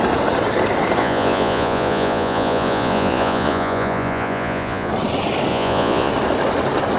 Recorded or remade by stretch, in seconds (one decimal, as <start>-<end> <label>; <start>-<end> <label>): 0.0-1.0 recorded; 1.0-4.9 remade; 4.9-5.5 recorded; 5.5-6.1 remade; 6.1-7.0 recorded